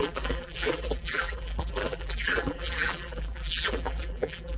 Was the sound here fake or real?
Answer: fake